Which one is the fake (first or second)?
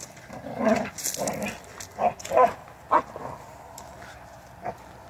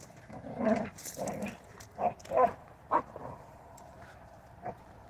second